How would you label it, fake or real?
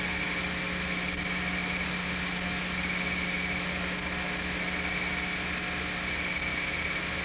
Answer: real